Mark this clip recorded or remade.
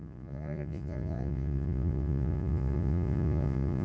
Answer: remade